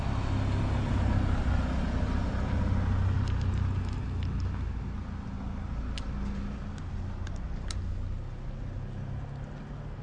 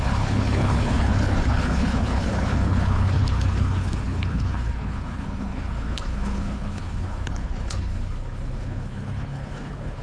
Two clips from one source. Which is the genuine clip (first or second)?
first